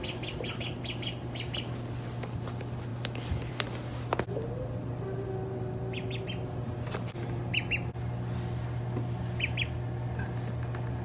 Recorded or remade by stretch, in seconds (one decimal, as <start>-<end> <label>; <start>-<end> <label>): 0.0-11.0 recorded